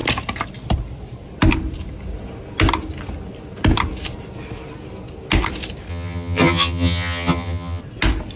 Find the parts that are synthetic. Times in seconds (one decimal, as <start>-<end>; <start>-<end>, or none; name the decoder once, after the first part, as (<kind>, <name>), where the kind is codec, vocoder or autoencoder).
5.9-7.8 (vocoder, HiFi-GAN)